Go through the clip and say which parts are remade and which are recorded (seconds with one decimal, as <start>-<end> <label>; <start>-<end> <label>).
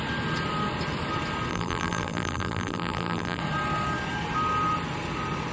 0.0-1.5 recorded; 1.5-3.4 remade; 3.4-5.5 recorded